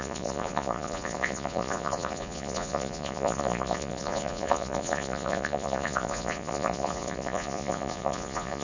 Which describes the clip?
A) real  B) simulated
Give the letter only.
B